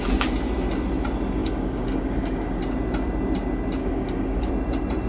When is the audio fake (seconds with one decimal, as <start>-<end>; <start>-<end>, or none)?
1.4-2.6; 3.8-4.5